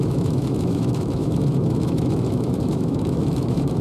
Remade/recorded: remade